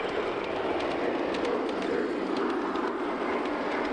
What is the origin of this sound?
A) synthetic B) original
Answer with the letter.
B